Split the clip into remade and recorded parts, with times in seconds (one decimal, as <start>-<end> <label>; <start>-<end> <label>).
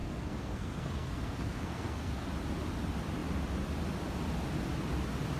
0.0-2.1 remade; 2.1-5.4 recorded